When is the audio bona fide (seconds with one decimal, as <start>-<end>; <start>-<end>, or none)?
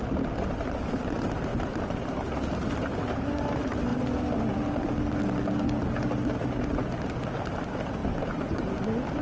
0.0-8.0; 8.7-9.2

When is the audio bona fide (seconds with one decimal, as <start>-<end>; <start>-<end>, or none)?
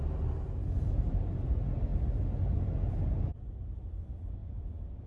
0.0-4.4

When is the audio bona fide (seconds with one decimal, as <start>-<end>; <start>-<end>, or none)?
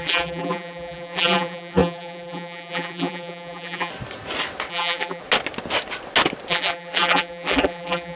3.9-4.7; 5.2-6.5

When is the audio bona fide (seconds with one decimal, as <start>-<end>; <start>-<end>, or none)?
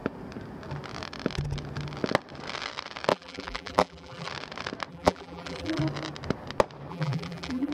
0.0-3.1; 4.3-4.9; 5.8-6.9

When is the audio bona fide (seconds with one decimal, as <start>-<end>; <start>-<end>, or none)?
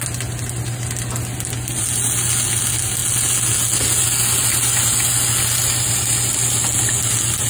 0.0-7.5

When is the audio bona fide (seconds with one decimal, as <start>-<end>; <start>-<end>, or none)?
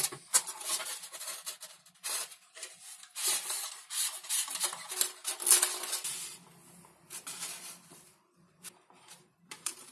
5.2-9.0